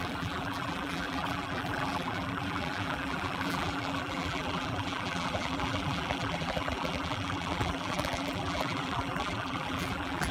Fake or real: fake